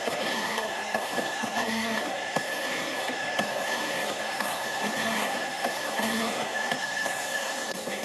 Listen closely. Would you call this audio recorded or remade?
remade